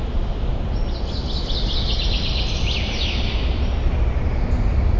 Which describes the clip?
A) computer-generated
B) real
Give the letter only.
B